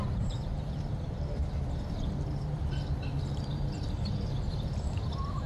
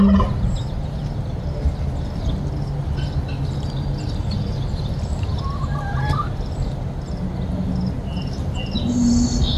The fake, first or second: first